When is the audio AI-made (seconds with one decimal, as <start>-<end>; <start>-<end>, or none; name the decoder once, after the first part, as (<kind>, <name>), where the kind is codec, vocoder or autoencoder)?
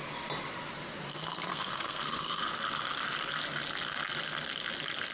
1.5-2.5 (codec, SNAC)